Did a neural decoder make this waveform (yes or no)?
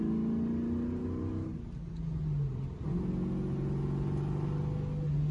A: no